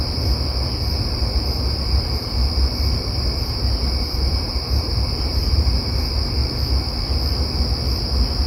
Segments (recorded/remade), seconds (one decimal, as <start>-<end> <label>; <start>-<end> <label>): 0.0-2.4 remade; 2.4-3.0 recorded; 3.0-6.4 remade; 6.4-8.5 recorded

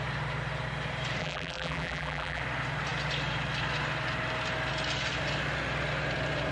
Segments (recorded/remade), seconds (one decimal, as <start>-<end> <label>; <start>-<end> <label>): 0.0-1.2 recorded; 1.2-2.4 remade; 2.4-6.5 recorded